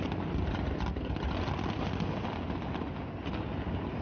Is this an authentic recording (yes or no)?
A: yes